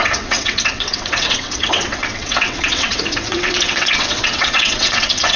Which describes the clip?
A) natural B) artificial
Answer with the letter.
B